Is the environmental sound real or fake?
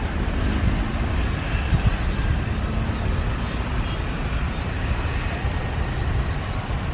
real